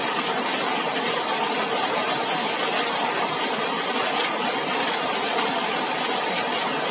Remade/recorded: recorded